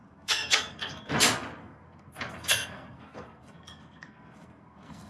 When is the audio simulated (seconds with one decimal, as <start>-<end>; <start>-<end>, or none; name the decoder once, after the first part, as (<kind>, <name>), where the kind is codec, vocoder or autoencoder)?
0.0-1.1 (codec, SNAC); 1.6-5.1